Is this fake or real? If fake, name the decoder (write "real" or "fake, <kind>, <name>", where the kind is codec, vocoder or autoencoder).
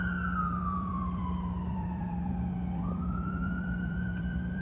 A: fake, vocoder, BigVGAN v2